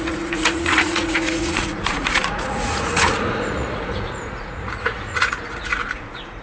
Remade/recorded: remade